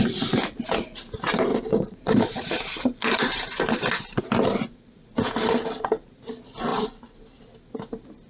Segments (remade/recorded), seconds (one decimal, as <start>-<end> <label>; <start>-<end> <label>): 0.0-1.5 recorded; 1.5-4.2 remade; 4.2-6.7 recorded; 6.7-7.4 remade; 7.4-8.3 recorded

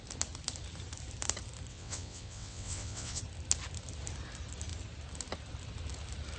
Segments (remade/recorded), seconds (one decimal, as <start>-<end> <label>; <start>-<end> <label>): 0.0-1.7 recorded; 1.7-3.2 remade; 3.2-6.4 recorded

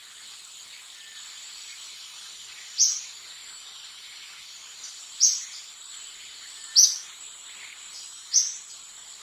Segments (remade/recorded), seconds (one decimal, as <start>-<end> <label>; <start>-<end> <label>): 0.0-9.2 recorded

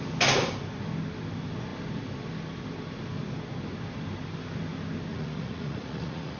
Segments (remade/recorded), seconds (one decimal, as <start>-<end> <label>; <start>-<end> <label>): 0.0-5.1 recorded; 5.1-6.4 remade

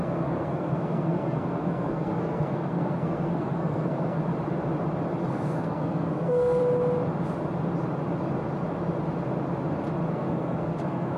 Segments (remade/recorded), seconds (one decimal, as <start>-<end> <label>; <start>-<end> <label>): 0.0-4.2 remade; 4.2-5.3 recorded; 5.3-6.6 remade; 6.6-10.1 recorded; 10.1-11.2 remade

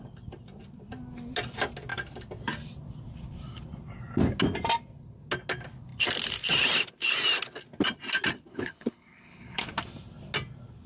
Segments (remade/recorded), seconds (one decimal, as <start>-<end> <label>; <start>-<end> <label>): 0.0-8.5 recorded; 8.5-9.7 remade; 9.7-10.9 recorded

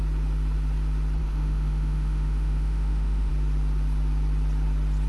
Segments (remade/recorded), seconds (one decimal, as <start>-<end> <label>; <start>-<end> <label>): 0.0-1.2 recorded; 1.2-3.3 remade; 3.3-5.1 recorded